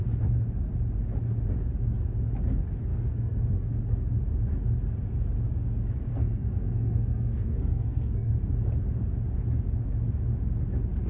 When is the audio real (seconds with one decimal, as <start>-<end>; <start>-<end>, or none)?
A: 0.0-2.9; 3.8-6.1; 8.3-11.1